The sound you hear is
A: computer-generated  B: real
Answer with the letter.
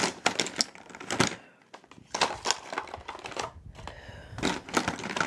B